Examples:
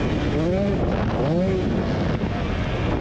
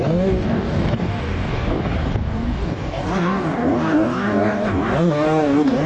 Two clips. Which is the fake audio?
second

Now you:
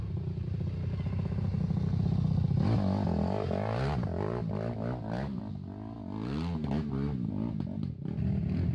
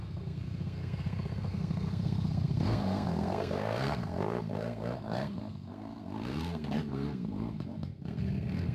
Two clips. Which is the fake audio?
second